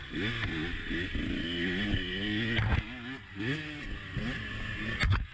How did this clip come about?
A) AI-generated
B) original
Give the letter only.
B